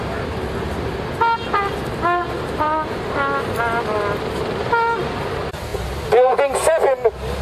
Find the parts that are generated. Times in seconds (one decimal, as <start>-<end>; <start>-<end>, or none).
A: 1.9-3.0